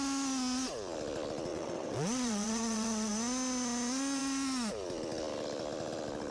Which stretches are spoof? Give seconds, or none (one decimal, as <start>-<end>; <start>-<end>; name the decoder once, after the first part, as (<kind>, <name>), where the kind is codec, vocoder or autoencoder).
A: 1.5-3.1 (vocoder, WaveNeXt)